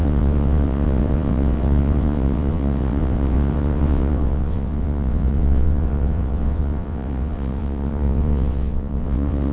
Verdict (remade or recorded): remade